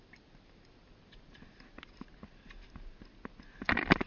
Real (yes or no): yes